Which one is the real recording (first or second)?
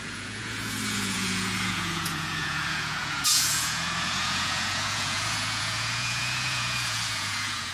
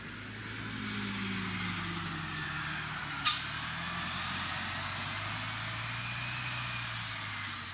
second